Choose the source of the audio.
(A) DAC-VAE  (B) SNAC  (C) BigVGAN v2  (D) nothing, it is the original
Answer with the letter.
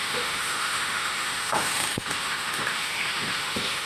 A